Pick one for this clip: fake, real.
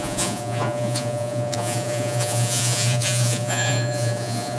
fake